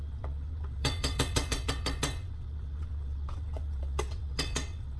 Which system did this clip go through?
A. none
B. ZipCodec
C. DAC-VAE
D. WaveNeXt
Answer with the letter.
D